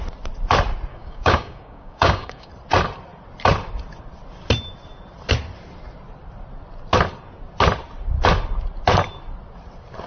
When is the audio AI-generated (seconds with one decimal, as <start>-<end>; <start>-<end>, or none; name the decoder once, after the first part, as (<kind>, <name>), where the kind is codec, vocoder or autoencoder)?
0.9-2.5 (codec, DAC)